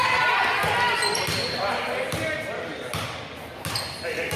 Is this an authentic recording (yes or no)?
yes